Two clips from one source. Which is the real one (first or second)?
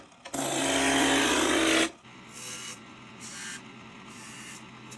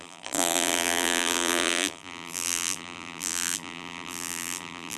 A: first